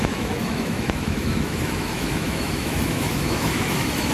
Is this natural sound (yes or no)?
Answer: no